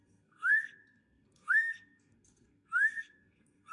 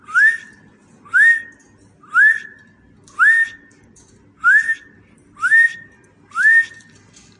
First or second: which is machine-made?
first